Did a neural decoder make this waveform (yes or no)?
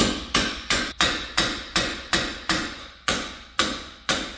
yes